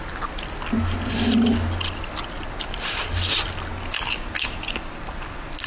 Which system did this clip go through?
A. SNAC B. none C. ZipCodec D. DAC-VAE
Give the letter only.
B